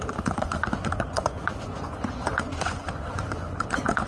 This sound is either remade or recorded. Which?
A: remade